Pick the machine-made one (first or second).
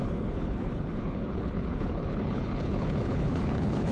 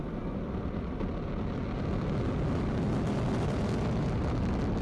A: first